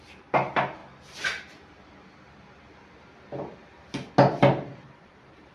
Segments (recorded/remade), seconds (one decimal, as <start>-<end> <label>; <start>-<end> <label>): 0.0-5.5 recorded